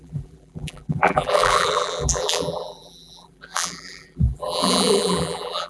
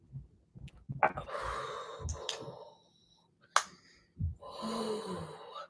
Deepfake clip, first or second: first